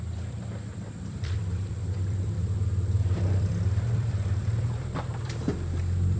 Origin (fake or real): fake